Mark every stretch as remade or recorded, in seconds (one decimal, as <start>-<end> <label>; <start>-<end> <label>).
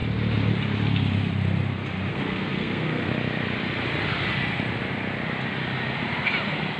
0.0-2.1 recorded; 2.1-3.1 remade; 3.1-6.8 recorded